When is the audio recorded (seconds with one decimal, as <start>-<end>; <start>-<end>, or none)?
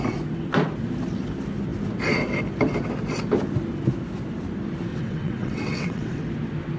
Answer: 0.0-4.9; 6.2-6.8